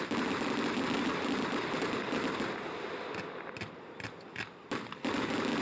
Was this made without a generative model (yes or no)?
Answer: yes